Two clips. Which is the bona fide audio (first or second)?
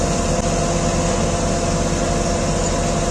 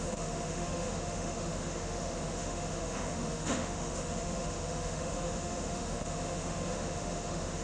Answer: first